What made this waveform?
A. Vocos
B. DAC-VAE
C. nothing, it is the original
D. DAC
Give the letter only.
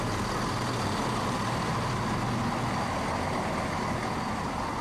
C